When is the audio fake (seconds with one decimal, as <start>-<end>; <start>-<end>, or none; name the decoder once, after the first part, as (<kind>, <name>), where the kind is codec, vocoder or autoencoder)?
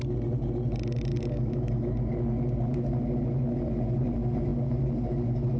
1.1-1.9 (autoencoder, DAC-VAE)